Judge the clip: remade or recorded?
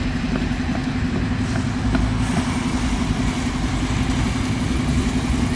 recorded